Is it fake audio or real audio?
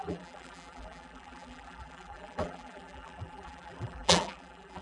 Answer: fake